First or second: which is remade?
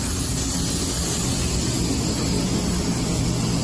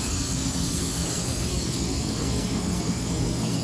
second